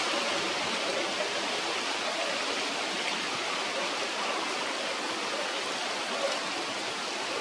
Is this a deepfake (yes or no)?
no